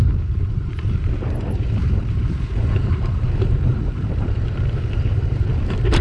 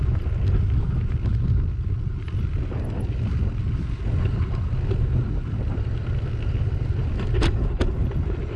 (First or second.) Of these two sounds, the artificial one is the first